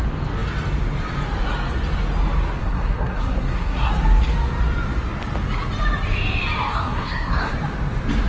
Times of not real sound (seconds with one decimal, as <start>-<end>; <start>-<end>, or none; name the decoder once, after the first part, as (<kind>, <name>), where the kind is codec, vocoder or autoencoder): 2.6-3.9 (codec, SNAC); 6.7-7.5